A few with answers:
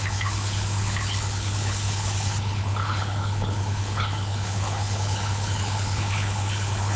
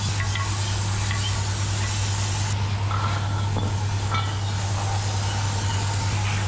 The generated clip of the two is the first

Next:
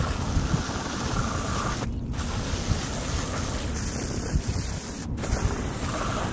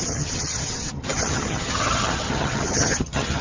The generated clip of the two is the second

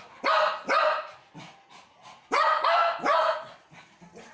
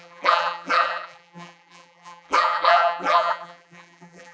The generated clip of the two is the second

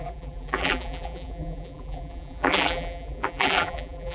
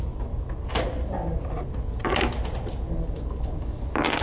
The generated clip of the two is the first